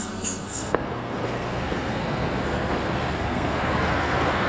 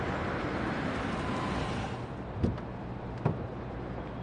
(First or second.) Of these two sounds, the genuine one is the second